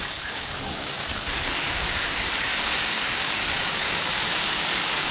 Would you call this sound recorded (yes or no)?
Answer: no